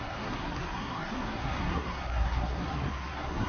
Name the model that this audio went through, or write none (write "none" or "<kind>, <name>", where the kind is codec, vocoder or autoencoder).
codec, SNAC